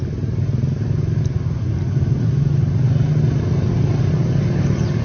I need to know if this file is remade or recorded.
recorded